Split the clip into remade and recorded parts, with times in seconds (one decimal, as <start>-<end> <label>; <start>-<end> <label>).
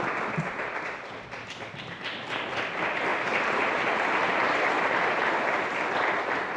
0.0-3.1 recorded; 3.1-4.6 remade; 4.6-6.6 recorded